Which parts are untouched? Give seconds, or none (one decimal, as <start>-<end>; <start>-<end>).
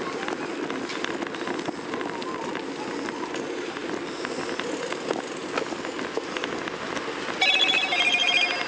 0.0-8.7